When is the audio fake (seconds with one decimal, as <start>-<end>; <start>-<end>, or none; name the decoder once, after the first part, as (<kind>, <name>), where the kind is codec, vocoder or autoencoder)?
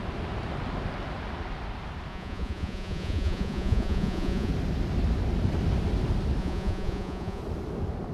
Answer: 2.1-4.5 (vocoder, Vocos); 6.4-7.4